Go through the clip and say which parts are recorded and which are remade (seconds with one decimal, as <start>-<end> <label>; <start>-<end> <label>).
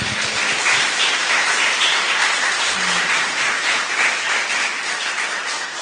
0.0-5.8 recorded